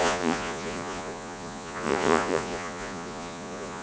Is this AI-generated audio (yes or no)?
yes